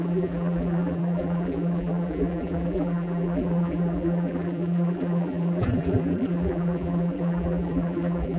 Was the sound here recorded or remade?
remade